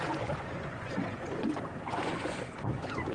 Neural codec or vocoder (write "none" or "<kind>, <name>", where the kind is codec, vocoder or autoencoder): vocoder, Vocos